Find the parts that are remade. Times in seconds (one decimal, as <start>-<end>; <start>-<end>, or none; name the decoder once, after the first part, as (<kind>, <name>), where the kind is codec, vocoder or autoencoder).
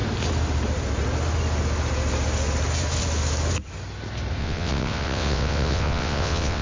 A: 4.4-6.6 (vocoder, WaveNeXt)